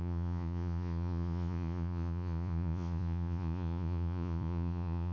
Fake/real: fake